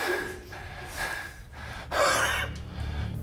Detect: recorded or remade recorded